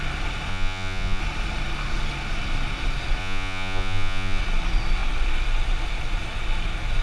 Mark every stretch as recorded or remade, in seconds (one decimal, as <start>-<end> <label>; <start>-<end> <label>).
0.0-0.5 recorded; 0.5-1.2 remade; 1.2-3.2 recorded; 3.2-4.4 remade; 4.4-7.0 recorded